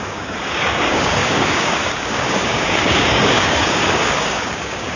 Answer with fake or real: fake